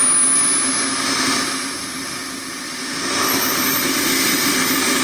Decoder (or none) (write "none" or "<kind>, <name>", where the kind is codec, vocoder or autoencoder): none